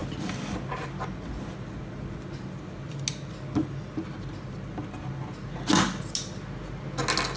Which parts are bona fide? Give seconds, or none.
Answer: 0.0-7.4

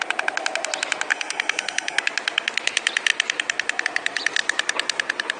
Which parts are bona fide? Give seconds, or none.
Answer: 0.0-1.1; 2.0-5.4

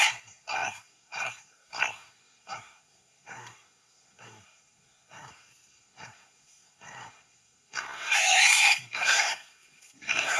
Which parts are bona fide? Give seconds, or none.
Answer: none

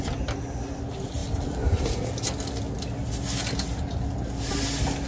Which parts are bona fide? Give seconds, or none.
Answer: 0.0-5.1

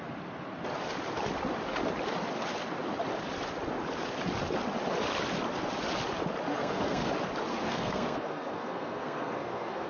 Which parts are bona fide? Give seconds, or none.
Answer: 0.0-6.5; 7.1-7.5

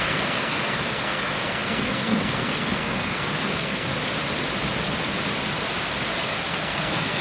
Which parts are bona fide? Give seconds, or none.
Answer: 3.9-6.2